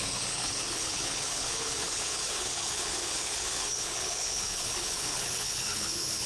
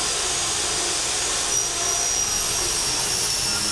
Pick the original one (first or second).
second